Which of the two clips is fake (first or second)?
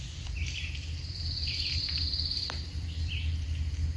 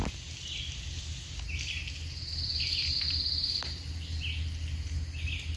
first